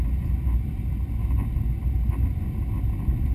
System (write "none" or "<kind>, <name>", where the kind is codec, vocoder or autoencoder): none